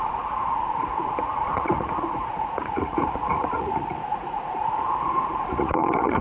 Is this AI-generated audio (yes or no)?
yes